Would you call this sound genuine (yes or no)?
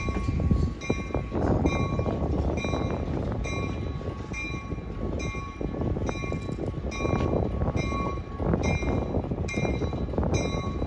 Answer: yes